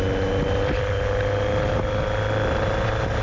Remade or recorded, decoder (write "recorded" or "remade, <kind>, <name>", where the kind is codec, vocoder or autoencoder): recorded